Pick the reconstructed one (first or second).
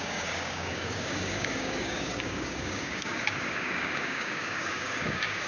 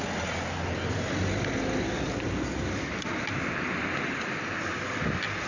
first